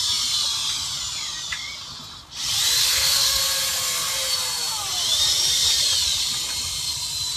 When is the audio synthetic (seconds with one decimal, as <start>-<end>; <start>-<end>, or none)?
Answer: 2.8-3.4